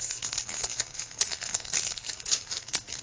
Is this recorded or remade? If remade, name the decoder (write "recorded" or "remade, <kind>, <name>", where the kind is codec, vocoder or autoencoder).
remade, codec, SNAC